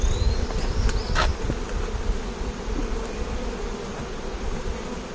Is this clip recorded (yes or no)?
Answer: yes